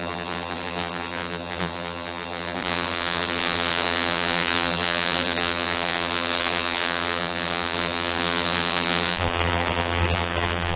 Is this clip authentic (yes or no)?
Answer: no